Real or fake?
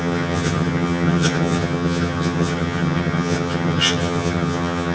fake